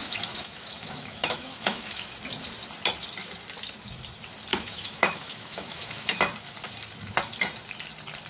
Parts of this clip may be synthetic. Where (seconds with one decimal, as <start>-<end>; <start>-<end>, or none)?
0.0-2.2; 4.5-6.2